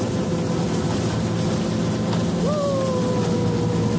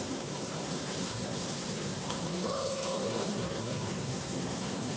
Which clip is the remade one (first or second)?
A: second